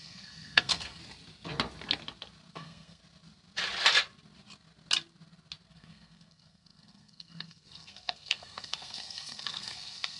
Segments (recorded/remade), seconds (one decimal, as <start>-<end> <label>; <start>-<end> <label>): 0.0-1.0 remade; 1.0-2.5 recorded; 2.5-3.0 remade; 3.0-5.7 recorded; 5.7-10.2 remade